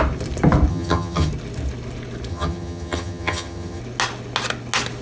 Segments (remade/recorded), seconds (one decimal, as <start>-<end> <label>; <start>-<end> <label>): 0.0-0.7 recorded; 0.7-1.3 remade; 1.3-2.3 recorded; 2.3-3.8 remade; 3.8-5.0 recorded